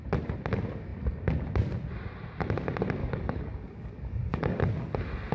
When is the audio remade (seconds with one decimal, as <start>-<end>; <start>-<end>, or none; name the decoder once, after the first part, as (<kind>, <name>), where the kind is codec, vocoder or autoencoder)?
3.0-4.6 (codec, DAC)